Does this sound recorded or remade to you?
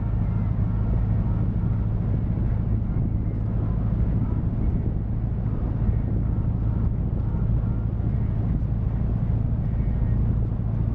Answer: recorded